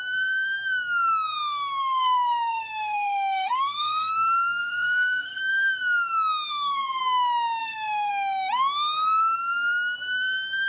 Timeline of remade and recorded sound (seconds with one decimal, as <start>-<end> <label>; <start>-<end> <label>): 0.0-1.8 recorded; 1.8-4.1 remade; 4.1-4.6 recorded; 4.6-5.4 remade; 5.4-6.5 recorded; 6.5-7.0 remade; 7.0-7.6 recorded; 7.6-8.1 remade; 8.1-10.7 recorded